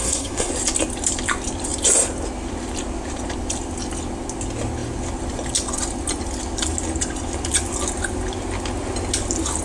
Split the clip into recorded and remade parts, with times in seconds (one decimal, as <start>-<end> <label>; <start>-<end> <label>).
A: 0.0-0.5 remade; 0.5-9.6 recorded